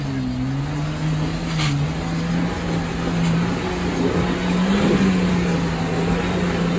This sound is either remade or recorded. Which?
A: recorded